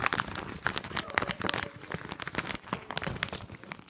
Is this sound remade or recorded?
recorded